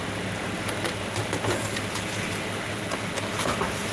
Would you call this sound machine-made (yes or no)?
no